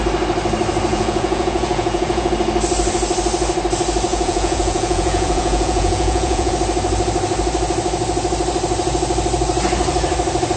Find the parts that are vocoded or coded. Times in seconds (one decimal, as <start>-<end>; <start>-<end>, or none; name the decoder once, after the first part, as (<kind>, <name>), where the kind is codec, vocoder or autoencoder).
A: 0.9-2.3 (vocoder, Vocos); 4.1-6.5